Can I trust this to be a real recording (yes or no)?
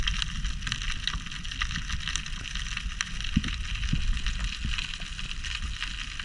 yes